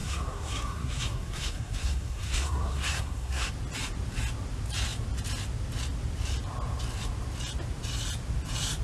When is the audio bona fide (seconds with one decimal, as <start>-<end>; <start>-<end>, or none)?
3.5-8.8

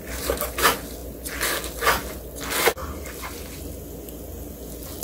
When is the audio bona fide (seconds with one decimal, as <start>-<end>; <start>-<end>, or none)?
0.0-5.0

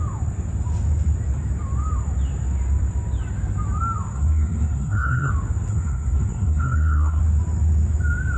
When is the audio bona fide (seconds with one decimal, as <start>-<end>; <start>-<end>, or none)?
0.0-4.1; 5.3-5.7; 7.2-8.4

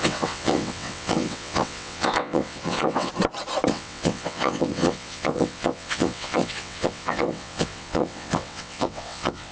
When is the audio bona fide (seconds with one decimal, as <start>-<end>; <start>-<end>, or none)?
3.1-3.7

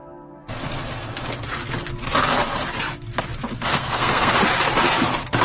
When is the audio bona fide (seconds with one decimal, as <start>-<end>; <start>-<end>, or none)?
0.0-3.7; 4.3-5.4

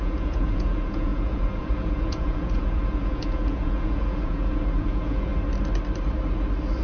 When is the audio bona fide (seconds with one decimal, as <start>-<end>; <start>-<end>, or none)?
5.3-6.8

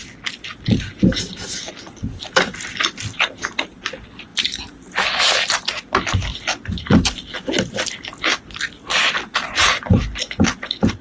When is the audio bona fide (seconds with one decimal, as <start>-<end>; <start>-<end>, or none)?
0.0-11.0

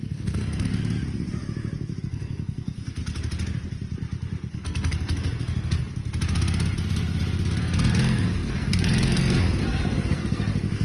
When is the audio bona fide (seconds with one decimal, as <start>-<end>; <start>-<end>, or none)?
0.7-2.0; 3.0-4.5; 5.9-7.6